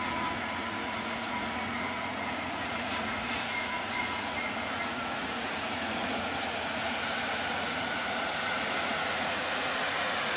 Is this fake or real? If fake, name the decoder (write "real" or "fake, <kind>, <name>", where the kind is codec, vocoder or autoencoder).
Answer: fake, vocoder, Vocos